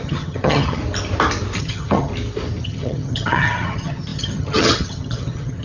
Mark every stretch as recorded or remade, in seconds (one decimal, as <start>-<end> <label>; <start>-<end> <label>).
0.0-0.8 remade; 0.8-1.6 recorded; 1.6-2.1 remade; 2.1-2.6 recorded; 2.6-5.6 remade

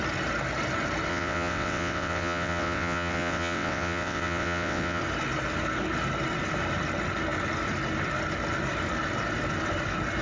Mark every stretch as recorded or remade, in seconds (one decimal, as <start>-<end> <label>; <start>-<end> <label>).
0.0-1.1 recorded; 1.1-5.0 remade; 5.0-10.2 recorded

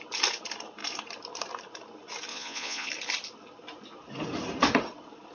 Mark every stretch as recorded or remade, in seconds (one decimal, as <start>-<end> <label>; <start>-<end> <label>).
0.0-2.3 recorded; 2.3-2.9 remade; 2.9-5.3 recorded

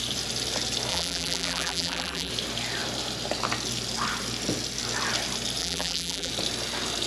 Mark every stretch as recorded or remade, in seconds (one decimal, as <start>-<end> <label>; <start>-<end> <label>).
0.0-0.9 recorded; 0.9-2.3 remade; 2.3-5.6 recorded; 5.6-6.3 remade; 6.3-7.1 recorded

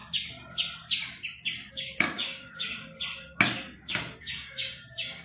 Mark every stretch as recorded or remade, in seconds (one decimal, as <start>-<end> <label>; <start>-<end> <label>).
0.0-1.7 recorded; 1.7-2.7 remade; 2.7-4.2 recorded; 4.2-5.2 remade

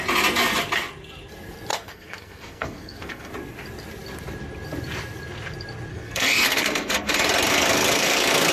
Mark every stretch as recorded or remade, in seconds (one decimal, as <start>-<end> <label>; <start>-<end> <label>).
0.0-1.7 recorded; 1.7-3.3 remade; 3.3-5.9 recorded; 5.9-7.1 remade; 7.1-7.5 recorded; 7.5-8.5 remade